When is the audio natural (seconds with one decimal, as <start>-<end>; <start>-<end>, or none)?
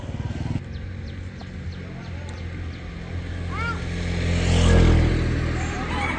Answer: 0.0-6.2